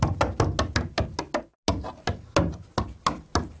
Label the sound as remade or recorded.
recorded